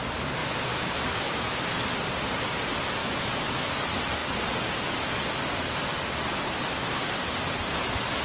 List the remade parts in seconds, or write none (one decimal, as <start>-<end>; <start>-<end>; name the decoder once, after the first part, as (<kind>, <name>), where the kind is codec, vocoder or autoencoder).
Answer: 0.4-1.6 (autoencoder, DAC-VAE); 3.0-3.7